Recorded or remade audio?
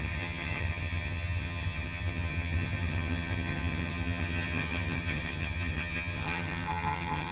remade